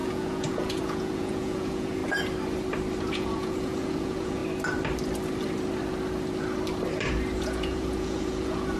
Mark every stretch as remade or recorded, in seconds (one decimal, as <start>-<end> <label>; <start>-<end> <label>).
0.0-2.0 remade; 2.0-3.0 recorded; 3.0-4.4 remade; 4.4-7.4 recorded; 7.4-8.8 remade